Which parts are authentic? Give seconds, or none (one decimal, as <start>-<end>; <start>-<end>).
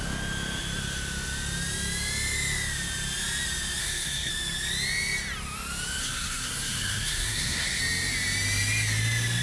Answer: 0.0-3.8; 4.3-6.0; 7.8-9.4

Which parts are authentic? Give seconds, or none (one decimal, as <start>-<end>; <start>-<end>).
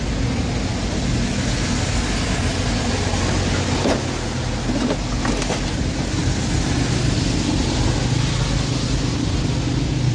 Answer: 0.0-10.1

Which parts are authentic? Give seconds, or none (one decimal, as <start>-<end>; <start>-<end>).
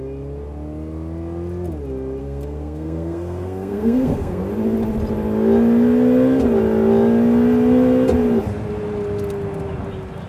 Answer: 0.0-2.2; 4.4-10.3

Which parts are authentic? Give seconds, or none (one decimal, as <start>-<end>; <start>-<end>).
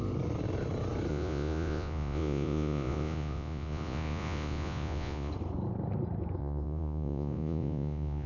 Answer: 0.0-1.1; 5.3-6.4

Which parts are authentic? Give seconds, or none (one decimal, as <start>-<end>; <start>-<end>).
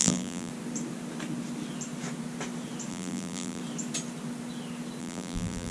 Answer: 0.5-2.9; 3.6-5.0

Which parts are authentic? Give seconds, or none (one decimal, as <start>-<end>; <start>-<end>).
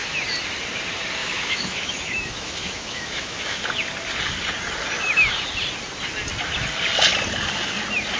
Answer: 0.0-1.2; 3.6-8.2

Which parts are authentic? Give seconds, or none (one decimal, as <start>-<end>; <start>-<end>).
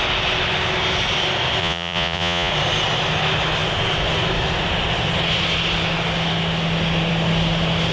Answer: 0.0-1.6; 2.5-7.9